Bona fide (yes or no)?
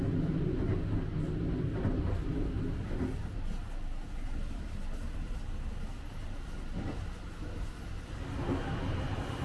yes